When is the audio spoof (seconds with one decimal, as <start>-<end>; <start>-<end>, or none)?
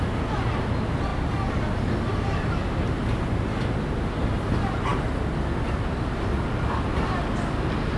none